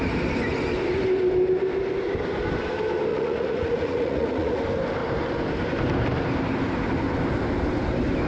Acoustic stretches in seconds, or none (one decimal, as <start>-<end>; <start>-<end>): 0.0-3.1; 4.6-8.3